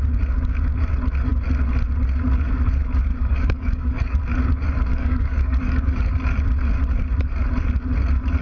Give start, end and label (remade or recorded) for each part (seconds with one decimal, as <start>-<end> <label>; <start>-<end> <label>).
0.0-3.2 recorded; 3.2-4.2 remade; 4.2-4.9 recorded; 4.9-6.1 remade; 6.1-8.4 recorded